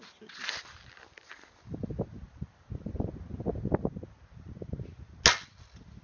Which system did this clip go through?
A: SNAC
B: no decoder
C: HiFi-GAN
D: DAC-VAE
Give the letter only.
B